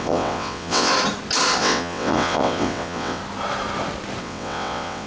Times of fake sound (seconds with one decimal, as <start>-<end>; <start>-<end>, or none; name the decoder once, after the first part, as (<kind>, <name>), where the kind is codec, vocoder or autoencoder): 0.0-0.9 (vocoder, WaveNeXt); 1.6-3.2; 4.2-5.1